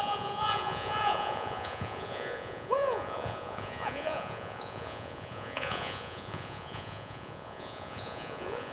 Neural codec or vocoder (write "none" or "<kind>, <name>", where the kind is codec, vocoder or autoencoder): vocoder, Vocos